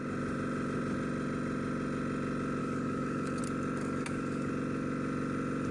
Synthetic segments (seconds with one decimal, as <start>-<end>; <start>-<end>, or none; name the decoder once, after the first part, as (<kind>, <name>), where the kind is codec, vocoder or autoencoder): 2.6-3.4 (codec, DAC); 3.8-4.5